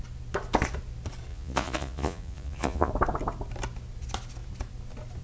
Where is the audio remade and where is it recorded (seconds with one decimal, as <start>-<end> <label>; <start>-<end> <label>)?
0.0-1.3 recorded; 1.3-2.9 remade; 2.9-5.2 recorded